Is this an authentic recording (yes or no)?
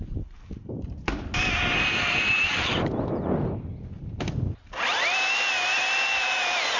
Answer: yes